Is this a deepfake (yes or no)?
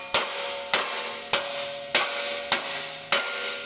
no